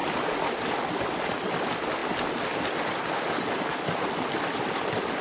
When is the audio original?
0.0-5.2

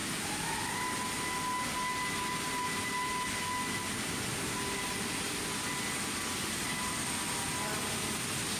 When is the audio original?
0.0-8.6

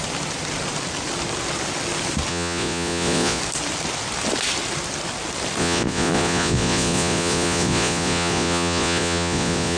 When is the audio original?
0.0-2.3; 3.4-5.6